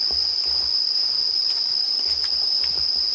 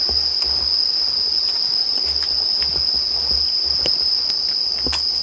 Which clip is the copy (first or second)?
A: first